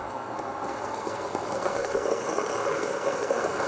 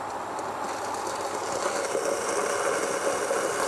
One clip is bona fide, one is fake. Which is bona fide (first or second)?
second